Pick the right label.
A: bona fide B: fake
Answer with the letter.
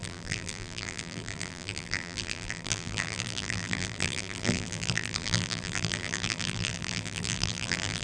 B